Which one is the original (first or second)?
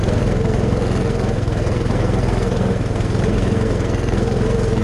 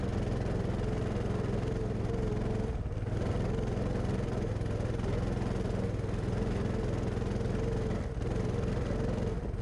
second